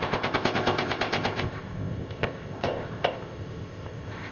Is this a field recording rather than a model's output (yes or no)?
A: no